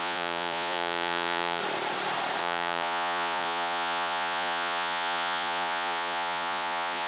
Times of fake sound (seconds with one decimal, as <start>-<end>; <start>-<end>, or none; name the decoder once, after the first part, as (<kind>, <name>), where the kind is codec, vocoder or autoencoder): 0.0-1.6 (vocoder, Vocos); 2.4-7.1